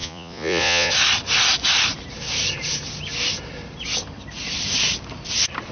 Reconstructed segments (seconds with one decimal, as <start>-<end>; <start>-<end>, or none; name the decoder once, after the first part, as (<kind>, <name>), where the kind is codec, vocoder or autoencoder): 0.0-0.9 (vocoder, Vocos)